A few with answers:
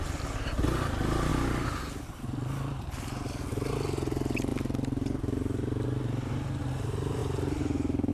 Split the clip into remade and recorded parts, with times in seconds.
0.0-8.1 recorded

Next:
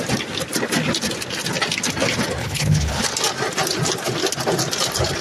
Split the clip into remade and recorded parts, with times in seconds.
0.0-2.4 recorded; 2.4-3.0 remade; 3.0-5.2 recorded